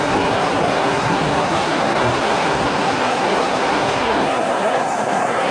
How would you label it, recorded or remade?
remade